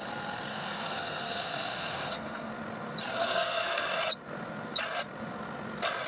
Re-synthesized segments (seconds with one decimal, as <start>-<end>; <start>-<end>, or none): 0.5-2.5; 3.2-3.8